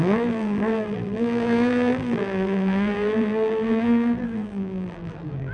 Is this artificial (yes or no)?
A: yes